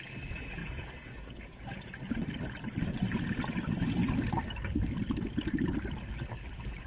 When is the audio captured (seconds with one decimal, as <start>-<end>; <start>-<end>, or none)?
0.0-0.6; 1.9-6.9

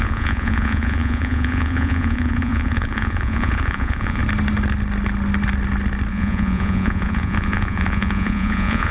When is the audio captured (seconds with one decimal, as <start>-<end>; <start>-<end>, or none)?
4.2-6.1

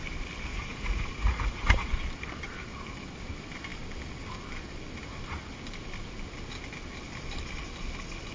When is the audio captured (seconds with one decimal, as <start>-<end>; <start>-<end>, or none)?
0.0-0.5; 1.9-8.3

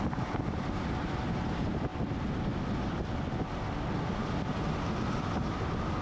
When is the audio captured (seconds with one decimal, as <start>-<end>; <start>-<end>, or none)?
0.0-6.0